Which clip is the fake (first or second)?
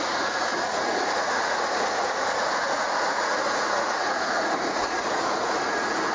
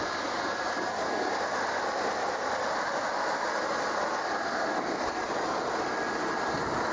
first